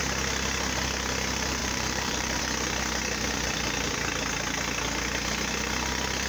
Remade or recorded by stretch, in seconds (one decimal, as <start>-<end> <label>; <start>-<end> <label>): 0.0-1.6 recorded; 1.6-2.4 remade; 2.4-6.3 recorded